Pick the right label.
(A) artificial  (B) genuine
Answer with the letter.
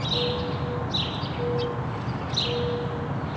B